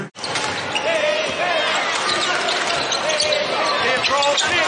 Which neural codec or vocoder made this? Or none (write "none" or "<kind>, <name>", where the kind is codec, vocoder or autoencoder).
none